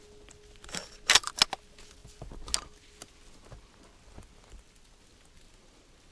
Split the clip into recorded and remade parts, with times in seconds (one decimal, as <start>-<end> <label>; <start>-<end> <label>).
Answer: 0.0-6.1 recorded